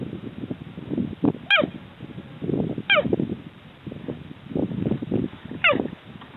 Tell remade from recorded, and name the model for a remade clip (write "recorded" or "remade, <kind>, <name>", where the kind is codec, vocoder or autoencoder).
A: recorded